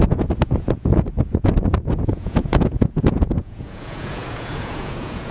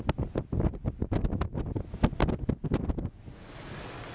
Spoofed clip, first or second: first